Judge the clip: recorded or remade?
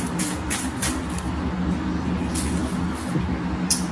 recorded